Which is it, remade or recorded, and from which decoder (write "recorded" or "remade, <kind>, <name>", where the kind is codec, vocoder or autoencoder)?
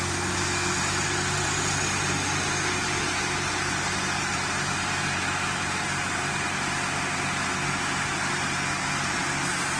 recorded